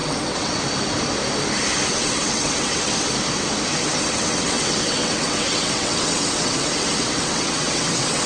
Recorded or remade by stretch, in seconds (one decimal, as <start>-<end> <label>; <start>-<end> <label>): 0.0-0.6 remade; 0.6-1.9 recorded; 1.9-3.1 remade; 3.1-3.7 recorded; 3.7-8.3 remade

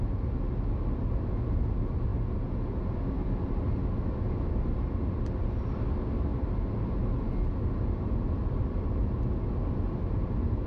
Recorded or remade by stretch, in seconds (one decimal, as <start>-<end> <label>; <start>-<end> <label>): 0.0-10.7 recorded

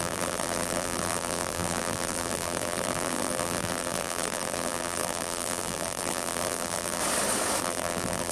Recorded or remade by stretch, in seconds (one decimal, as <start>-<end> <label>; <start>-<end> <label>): 0.0-7.0 remade; 7.0-7.6 recorded; 7.6-8.3 remade

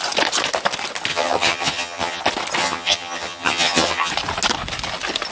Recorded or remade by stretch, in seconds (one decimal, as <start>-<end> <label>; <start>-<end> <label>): 0.0-1.1 recorded; 1.1-2.2 remade; 2.2-2.6 recorded; 2.6-4.1 remade; 4.1-5.3 recorded